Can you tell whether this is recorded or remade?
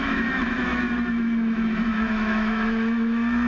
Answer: remade